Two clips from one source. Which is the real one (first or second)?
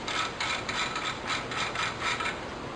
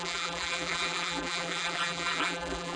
first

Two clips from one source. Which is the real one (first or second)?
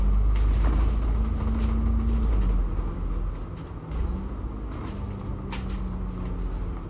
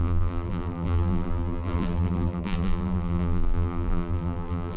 first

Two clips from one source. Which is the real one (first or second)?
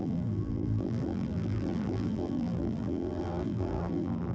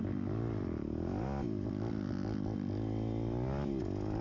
second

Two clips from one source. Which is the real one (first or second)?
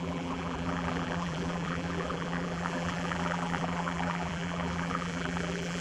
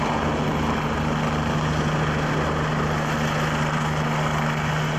second